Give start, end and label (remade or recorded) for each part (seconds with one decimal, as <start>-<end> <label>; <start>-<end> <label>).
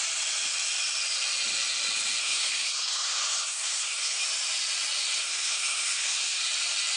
0.0-2.2 recorded; 2.2-4.2 remade; 4.2-5.2 recorded; 5.2-6.4 remade; 6.4-7.0 recorded